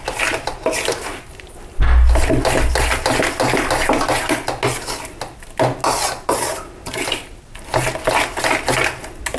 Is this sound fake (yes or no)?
no